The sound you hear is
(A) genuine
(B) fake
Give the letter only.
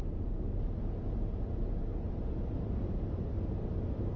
A